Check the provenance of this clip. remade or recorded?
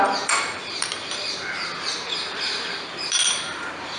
remade